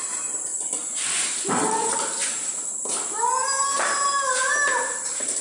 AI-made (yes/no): yes